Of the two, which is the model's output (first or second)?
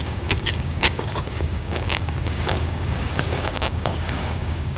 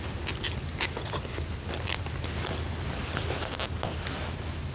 first